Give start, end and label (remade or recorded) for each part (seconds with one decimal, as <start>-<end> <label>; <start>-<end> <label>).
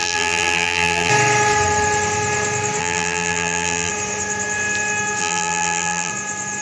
0.0-1.1 remade; 1.1-2.8 recorded; 2.8-3.9 remade; 3.9-5.2 recorded; 5.2-6.1 remade; 6.1-6.6 recorded